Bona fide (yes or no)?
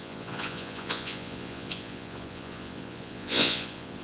no